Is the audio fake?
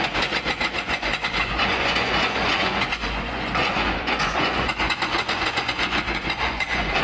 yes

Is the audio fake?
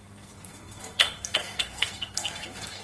yes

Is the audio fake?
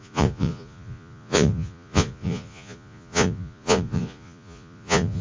yes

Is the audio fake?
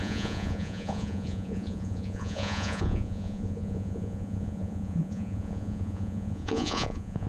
yes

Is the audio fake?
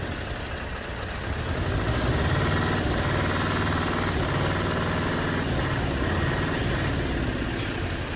no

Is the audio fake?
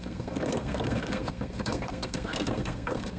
yes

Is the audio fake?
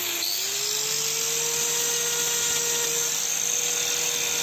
no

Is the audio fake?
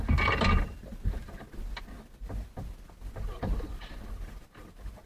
no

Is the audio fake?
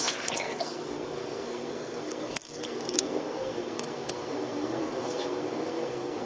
yes